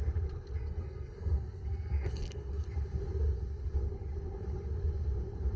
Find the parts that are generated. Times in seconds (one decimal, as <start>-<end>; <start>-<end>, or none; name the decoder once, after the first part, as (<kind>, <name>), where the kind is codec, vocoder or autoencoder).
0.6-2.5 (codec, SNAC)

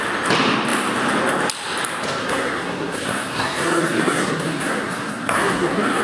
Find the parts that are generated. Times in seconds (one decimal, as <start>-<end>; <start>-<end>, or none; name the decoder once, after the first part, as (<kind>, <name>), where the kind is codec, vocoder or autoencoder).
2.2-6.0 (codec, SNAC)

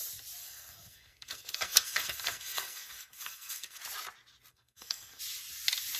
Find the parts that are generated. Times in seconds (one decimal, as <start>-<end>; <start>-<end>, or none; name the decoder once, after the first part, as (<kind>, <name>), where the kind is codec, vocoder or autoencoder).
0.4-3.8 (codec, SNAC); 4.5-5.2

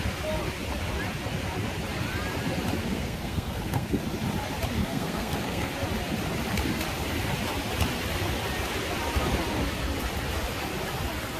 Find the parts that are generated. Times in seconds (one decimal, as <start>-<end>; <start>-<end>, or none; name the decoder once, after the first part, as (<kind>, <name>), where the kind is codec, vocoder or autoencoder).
2.8-4.0 (codec, SNAC); 4.8-5.7

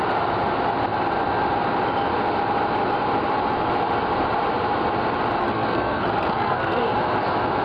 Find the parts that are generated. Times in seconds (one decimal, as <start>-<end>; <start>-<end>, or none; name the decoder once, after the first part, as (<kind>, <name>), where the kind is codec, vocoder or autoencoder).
5.4-6.8 (codec, SNAC)

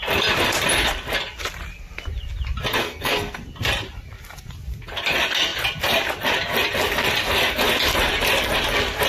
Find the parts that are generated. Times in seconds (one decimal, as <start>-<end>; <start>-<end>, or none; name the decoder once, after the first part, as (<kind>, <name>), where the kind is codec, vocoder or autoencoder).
2.8-3.4 (codec, SNAC)

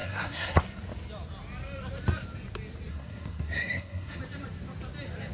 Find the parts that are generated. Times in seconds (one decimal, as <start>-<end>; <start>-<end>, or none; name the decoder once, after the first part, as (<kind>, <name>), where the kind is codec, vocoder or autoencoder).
0.0-0.6 (codec, SNAC); 2.9-4.2